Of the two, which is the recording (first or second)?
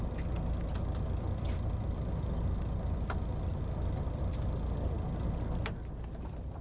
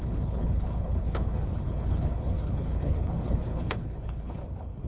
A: first